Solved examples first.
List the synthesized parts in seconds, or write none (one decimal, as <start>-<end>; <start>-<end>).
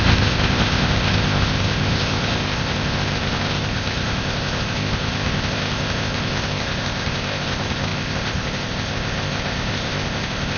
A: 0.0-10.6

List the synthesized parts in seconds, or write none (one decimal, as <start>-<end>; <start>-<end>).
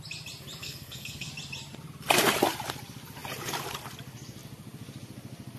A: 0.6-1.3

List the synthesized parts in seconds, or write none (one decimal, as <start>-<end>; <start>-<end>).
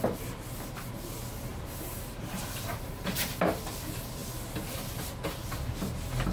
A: 1.5-3.3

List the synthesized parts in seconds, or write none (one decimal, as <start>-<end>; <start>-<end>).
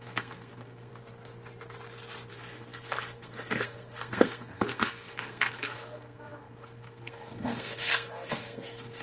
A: 0.0-0.9; 2.3-9.0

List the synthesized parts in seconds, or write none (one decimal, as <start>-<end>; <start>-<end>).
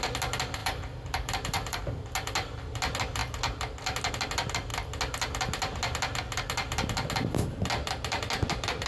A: 0.6-1.8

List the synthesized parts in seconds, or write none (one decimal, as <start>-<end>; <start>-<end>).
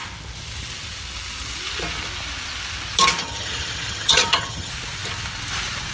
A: 3.2-4.7